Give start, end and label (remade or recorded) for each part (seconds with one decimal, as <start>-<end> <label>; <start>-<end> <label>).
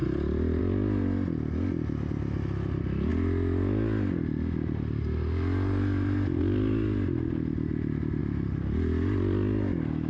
0.0-10.1 recorded